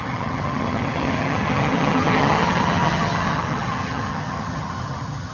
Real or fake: fake